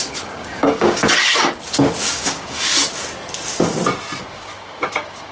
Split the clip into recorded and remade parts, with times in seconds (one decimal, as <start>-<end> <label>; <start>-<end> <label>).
0.0-1.0 remade; 1.0-2.0 recorded; 2.0-2.7 remade; 2.7-4.2 recorded; 4.2-5.3 remade